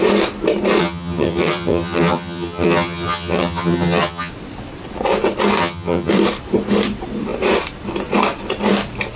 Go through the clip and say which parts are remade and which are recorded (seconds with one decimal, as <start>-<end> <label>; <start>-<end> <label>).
0.0-0.8 recorded; 0.8-4.3 remade; 4.3-5.6 recorded; 5.6-6.1 remade; 6.1-9.2 recorded